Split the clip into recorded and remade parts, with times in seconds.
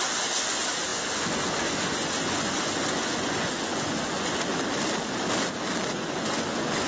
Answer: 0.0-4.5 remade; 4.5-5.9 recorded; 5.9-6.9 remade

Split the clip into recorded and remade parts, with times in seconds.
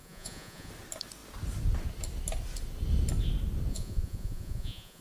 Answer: 0.0-0.7 remade; 0.7-3.7 recorded; 3.7-5.0 remade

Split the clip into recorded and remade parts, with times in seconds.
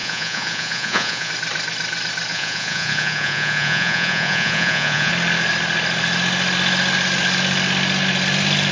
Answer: 0.0-1.3 remade; 1.3-2.3 recorded; 2.3-5.1 remade; 5.1-8.7 recorded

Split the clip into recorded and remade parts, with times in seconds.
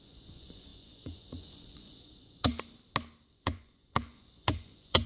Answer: 0.0-2.5 remade; 2.5-3.3 recorded; 3.3-5.1 remade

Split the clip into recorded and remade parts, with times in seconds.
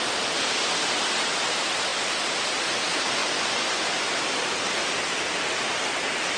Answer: 0.0-3.2 recorded; 3.2-4.1 remade; 4.1-6.4 recorded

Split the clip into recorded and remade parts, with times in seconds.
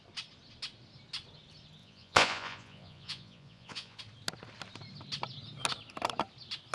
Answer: 0.0-1.8 recorded; 1.8-4.0 remade; 4.0-6.7 recorded